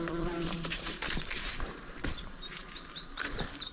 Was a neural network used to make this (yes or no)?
yes